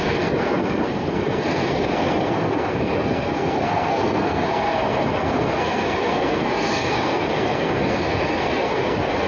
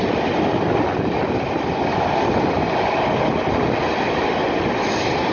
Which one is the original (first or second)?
second